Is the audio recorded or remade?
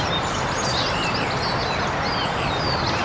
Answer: recorded